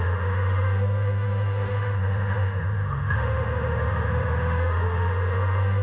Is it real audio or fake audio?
fake